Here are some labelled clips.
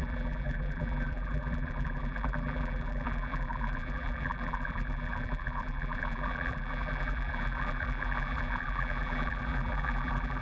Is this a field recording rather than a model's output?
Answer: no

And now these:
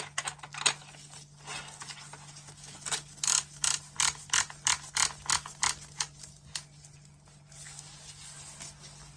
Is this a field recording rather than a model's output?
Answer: yes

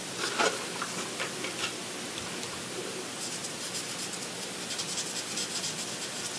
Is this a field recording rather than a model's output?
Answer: yes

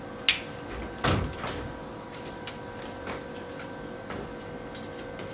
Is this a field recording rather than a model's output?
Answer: yes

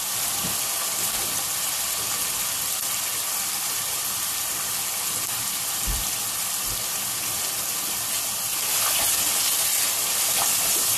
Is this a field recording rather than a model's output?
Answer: yes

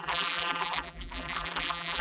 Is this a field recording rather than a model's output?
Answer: no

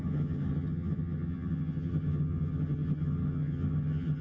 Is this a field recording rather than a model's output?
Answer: no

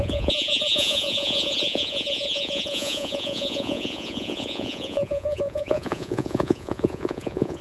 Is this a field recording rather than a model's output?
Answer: no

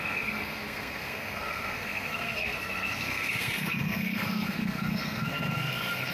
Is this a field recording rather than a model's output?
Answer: no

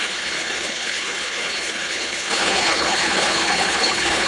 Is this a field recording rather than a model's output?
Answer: no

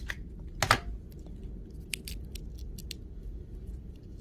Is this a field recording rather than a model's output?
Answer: yes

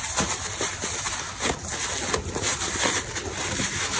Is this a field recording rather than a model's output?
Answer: yes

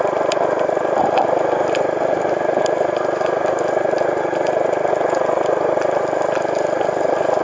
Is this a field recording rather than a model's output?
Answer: yes